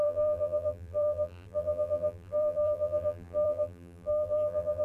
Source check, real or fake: fake